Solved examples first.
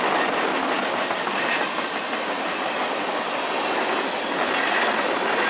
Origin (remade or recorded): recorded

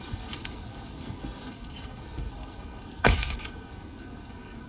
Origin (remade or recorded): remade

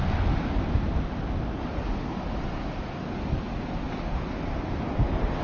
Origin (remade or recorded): recorded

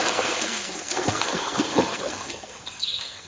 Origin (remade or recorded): remade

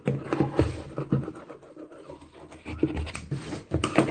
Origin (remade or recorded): recorded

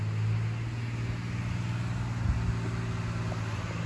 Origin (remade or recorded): recorded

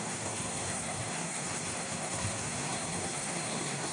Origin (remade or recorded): remade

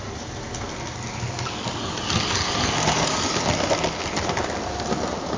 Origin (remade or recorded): recorded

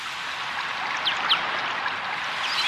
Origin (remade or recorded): recorded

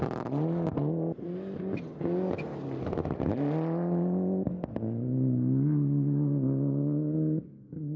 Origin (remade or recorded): recorded